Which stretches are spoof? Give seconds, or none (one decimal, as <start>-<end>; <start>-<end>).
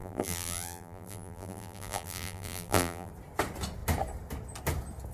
0.0-3.1